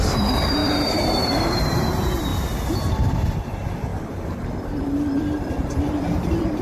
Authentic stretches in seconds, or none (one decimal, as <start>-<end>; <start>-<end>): 2.3-2.9; 3.9-4.6